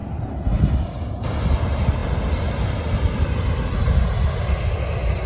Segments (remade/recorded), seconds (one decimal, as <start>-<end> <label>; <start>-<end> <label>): 0.0-5.3 recorded